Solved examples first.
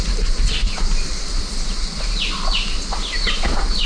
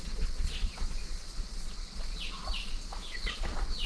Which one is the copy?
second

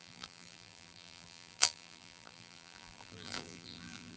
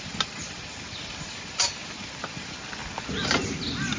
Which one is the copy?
first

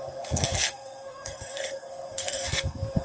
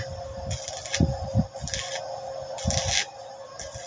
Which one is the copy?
first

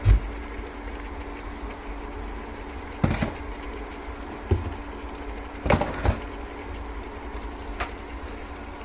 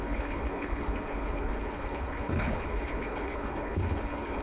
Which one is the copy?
second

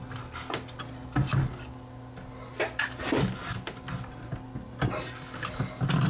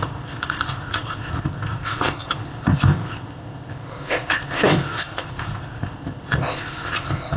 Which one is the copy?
second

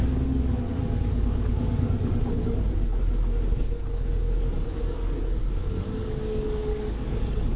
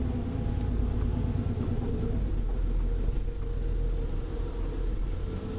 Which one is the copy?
first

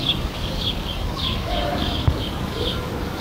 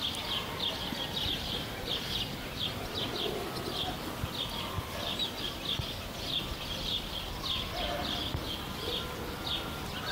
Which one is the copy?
first